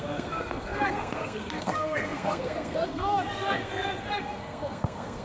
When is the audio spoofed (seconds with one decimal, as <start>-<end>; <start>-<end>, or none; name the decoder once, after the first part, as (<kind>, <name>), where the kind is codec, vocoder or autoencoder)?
0.0-5.2 (codec, SNAC)